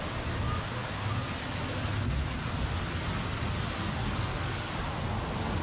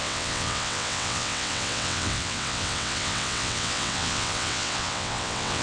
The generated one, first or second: second